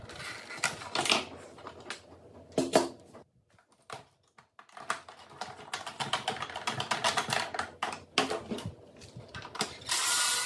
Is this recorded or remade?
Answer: recorded